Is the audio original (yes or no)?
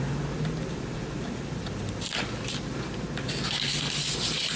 yes